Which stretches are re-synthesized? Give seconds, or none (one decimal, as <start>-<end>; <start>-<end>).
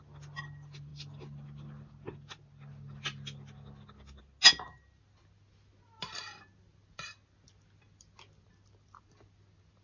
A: none